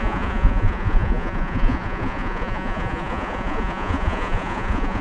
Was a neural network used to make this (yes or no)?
yes